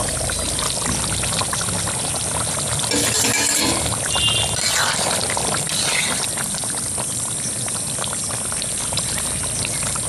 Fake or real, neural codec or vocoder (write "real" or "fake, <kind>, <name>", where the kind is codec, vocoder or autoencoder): real